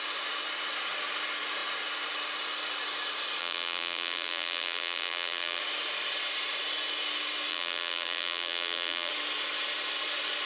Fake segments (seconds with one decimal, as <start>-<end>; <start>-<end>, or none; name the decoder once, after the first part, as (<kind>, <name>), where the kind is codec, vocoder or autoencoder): 3.4-5.6 (vocoder, BigVGAN v2); 7.5-9.1